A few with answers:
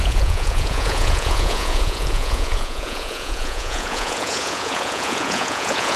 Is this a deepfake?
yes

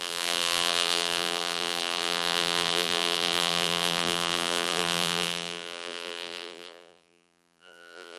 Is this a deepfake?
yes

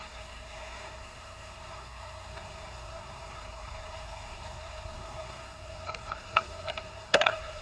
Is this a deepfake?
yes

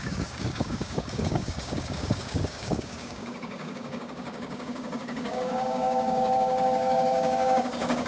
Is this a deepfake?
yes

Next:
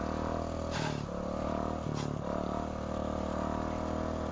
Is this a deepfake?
no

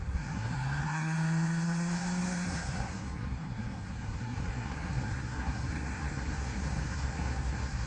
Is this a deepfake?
yes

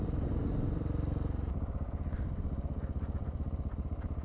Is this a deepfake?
no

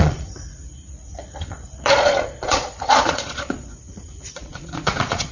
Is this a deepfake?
yes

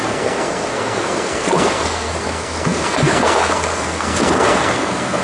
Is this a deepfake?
yes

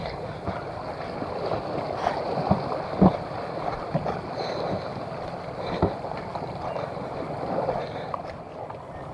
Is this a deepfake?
no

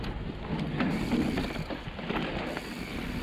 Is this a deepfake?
no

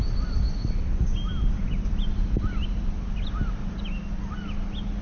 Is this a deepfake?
no